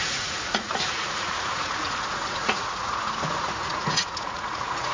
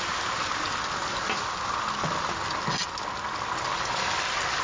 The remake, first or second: first